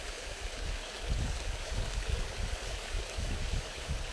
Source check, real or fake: fake